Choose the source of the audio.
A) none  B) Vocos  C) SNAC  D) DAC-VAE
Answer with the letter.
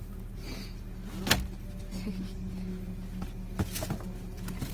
A